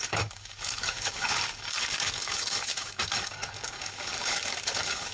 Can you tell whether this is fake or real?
fake